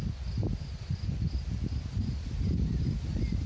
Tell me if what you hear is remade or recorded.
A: recorded